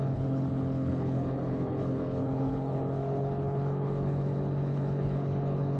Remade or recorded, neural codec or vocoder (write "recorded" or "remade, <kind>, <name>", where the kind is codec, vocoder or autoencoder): remade, codec, HILCodec